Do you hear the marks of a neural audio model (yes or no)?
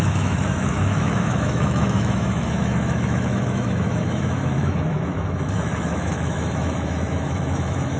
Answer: yes